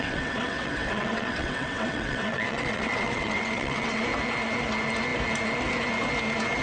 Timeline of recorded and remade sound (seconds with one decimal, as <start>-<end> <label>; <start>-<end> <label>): 0.0-4.0 remade; 4.0-6.6 recorded